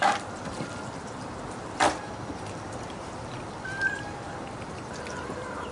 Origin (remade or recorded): remade